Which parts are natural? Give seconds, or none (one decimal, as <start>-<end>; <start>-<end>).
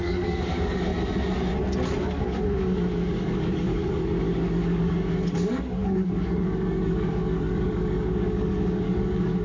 0.9-2.0